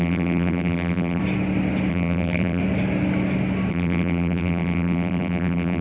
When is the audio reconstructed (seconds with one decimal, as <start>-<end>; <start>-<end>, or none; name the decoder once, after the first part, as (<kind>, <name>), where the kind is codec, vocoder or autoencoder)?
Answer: 0.0-1.2 (vocoder, BigVGAN v2); 1.9-2.6; 3.7-5.8